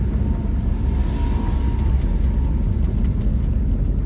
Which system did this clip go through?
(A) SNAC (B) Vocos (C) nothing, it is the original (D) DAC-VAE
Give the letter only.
C